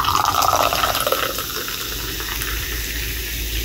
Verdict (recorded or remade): recorded